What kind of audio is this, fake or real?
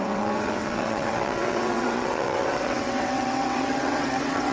fake